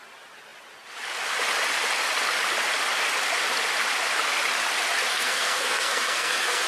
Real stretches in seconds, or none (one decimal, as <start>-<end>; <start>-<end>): 0.0-5.1